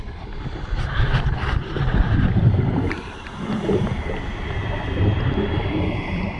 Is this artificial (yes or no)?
yes